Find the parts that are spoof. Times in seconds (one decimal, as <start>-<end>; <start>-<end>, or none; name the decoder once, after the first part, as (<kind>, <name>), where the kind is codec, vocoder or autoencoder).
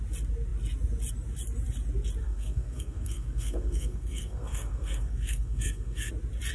2.2-6.1 (codec, SNAC)